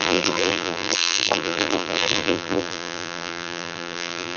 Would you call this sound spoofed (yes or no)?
yes